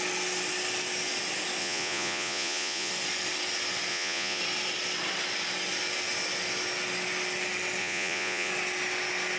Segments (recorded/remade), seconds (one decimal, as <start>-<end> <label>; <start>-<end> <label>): 0.0-1.6 recorded; 1.6-2.9 remade; 2.9-3.9 recorded; 3.9-4.4 remade; 4.4-7.8 recorded; 7.8-8.5 remade; 8.5-9.4 recorded